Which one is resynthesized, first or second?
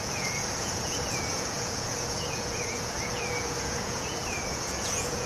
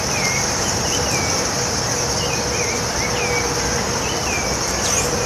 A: first